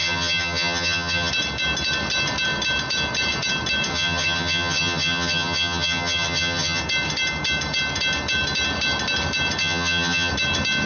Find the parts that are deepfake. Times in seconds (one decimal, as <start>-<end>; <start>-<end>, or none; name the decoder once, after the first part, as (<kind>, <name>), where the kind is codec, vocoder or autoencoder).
0.0-1.3 (vocoder, HiFi-GAN); 3.9-6.8; 9.6-10.3

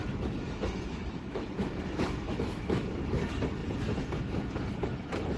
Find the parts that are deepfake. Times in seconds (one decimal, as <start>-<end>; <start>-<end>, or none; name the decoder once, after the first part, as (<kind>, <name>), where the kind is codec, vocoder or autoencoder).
0.0-3.2 (autoencoder, DAC-VAE)

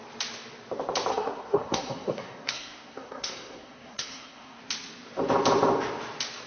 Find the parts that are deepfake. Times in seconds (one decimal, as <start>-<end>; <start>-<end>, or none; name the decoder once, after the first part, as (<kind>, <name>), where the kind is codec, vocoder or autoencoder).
1.1-4.6 (codec, SNAC)

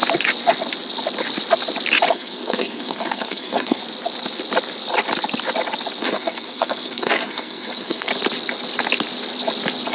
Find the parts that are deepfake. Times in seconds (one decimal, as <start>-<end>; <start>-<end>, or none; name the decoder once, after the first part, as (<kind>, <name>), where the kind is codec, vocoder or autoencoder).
2.1-3.8 (codec, SNAC); 6.0-8.1

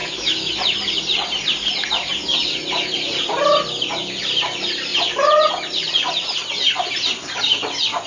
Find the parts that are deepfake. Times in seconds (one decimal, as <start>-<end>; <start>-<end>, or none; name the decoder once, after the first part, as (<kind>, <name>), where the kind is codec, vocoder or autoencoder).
0.0-0.5 (autoencoder, DAC-VAE)

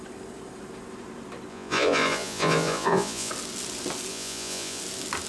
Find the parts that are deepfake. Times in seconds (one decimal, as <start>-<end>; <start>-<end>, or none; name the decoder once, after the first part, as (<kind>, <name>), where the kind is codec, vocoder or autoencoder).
1.5-3.3 (vocoder, Vocos); 4.1-4.8

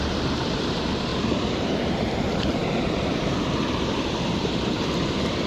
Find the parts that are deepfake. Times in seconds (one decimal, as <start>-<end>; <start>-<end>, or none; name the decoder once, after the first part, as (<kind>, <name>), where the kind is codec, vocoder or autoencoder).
0.0-5.5 (vocoder, BigVGAN v2)

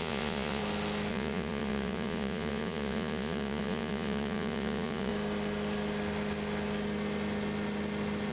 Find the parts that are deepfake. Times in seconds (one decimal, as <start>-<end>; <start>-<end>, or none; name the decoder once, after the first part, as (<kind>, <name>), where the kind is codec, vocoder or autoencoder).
0.0-0.6 (vocoder, Vocos); 1.1-5.1